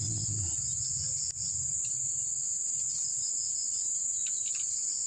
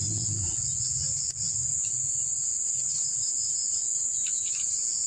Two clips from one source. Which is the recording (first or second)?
first